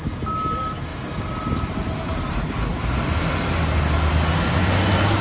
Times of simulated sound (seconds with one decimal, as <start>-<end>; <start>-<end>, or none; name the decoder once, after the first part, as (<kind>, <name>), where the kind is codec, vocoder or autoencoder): none